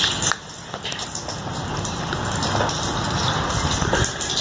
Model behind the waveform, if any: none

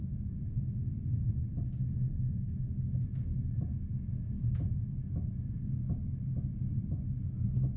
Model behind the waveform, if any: none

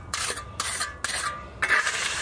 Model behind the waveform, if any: none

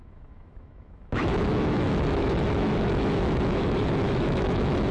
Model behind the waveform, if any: autoencoder, DAC-VAE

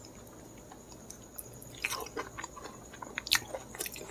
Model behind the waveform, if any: none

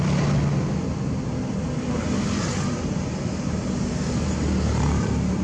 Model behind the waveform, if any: none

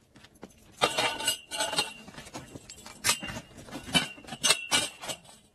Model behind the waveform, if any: none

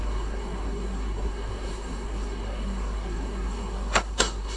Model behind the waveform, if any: codec, SNAC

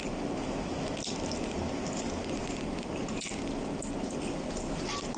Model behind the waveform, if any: none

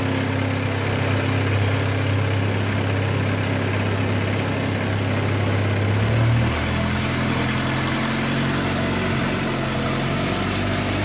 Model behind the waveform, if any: none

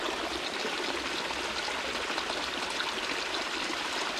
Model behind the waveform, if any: none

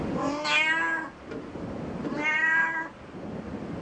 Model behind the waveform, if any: none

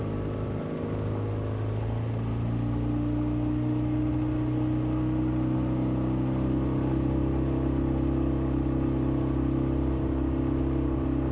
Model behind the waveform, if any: none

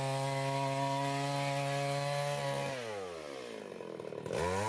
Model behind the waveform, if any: none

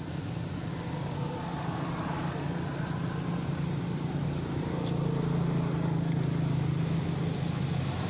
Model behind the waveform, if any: none